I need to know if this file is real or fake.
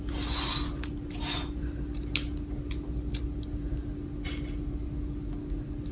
real